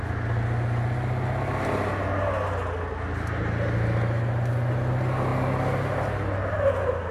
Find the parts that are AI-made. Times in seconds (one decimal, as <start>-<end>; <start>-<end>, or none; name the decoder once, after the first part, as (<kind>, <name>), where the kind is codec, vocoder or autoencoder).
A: none